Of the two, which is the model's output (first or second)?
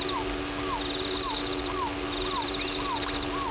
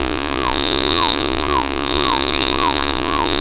second